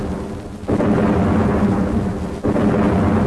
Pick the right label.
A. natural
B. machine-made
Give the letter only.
A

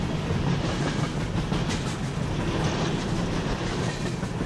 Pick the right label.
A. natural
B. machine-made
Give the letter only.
A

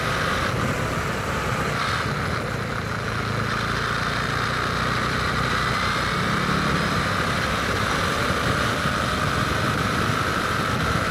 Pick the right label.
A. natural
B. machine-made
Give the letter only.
A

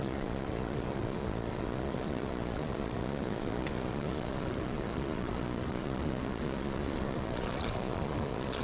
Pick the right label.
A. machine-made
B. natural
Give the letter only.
A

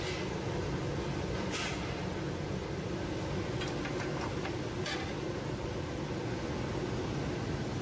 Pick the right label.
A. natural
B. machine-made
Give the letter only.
A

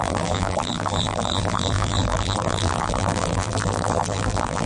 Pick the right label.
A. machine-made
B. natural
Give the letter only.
A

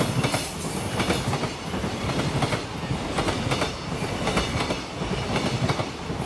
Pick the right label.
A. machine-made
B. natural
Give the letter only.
B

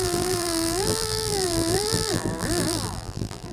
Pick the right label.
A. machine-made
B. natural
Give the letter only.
A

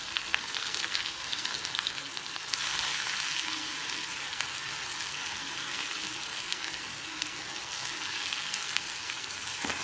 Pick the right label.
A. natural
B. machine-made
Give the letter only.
B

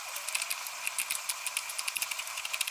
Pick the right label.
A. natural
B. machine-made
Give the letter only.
A